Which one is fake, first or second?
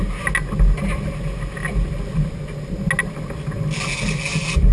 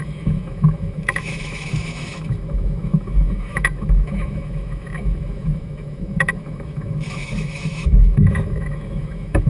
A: second